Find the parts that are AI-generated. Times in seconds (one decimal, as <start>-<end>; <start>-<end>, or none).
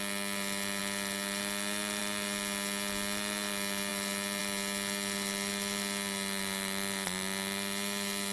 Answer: none